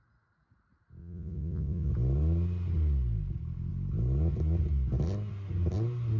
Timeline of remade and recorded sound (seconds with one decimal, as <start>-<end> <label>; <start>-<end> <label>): 0.0-1.0 recorded; 1.0-1.9 remade; 1.9-6.2 recorded